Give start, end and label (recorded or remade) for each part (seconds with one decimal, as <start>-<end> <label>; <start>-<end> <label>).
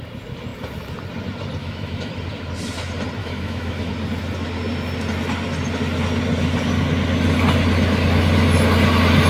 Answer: 0.0-1.6 recorded; 1.6-2.1 remade; 2.1-3.2 recorded; 3.2-3.9 remade; 3.9-9.3 recorded